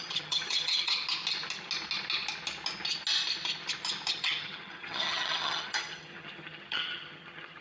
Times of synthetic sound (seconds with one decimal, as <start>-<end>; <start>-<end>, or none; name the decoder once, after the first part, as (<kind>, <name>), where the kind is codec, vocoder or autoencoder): 0.0-1.0 (vocoder, HiFi-GAN); 4.1-7.6